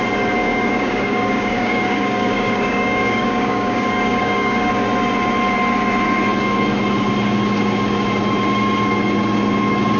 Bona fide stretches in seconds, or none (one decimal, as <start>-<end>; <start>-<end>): 0.0-0.4; 4.7-10.0